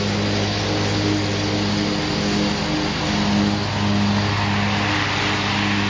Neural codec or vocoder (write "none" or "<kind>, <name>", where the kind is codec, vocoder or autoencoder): none